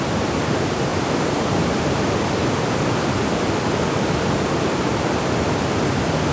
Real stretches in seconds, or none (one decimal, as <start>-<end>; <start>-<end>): 0.0-6.3